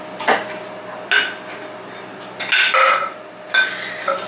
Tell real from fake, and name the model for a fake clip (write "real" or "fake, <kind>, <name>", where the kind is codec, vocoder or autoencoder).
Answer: real